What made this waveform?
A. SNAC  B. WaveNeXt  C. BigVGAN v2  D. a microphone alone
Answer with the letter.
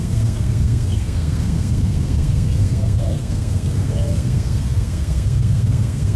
A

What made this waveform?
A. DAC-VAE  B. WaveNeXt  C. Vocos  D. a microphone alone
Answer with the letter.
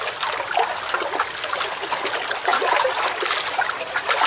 D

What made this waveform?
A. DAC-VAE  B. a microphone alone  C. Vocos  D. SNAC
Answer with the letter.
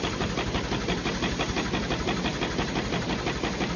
B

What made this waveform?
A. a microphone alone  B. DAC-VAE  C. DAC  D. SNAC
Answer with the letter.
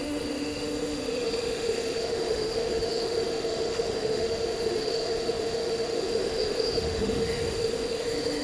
B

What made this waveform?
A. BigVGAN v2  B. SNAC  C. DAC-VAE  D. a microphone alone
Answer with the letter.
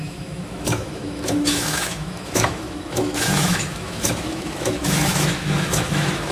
C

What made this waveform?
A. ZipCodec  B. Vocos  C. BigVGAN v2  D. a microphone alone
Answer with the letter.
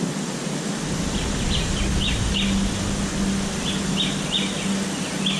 D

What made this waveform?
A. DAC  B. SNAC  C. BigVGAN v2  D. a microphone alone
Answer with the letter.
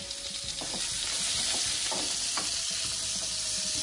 D